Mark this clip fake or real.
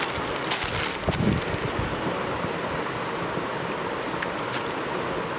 real